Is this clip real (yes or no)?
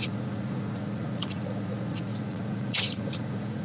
no